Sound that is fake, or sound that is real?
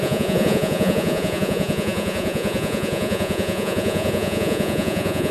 fake